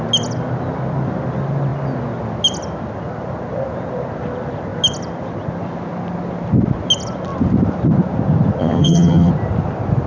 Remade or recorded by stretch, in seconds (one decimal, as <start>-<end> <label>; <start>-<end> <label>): 0.0-8.6 recorded; 8.6-9.3 remade; 9.3-10.1 recorded